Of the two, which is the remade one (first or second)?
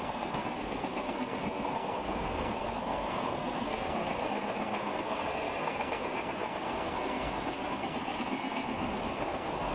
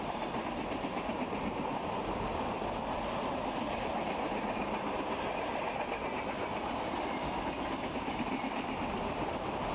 first